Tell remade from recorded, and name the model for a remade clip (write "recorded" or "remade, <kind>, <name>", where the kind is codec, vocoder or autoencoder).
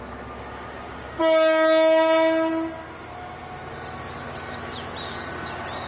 recorded